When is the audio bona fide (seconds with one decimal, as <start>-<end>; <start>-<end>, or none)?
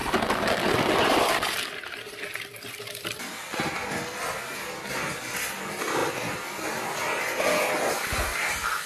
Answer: 0.0-8.9